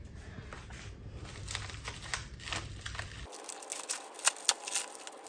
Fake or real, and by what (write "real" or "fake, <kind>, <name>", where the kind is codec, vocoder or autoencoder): real